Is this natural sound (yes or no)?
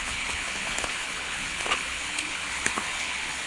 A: no